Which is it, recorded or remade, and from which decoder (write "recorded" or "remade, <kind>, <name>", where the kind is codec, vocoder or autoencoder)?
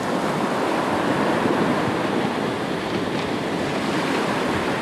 recorded